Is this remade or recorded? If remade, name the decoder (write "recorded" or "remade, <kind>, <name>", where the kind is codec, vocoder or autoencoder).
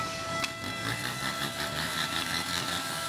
remade, codec, DAC